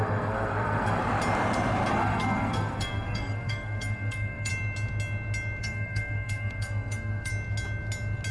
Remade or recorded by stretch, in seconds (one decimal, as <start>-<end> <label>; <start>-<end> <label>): 0.0-1.0 remade; 1.0-1.9 recorded; 1.9-4.5 remade; 4.5-5.6 recorded; 5.6-7.3 remade; 7.3-8.3 recorded